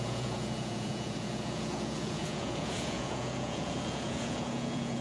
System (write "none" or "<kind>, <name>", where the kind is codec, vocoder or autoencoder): vocoder, Vocos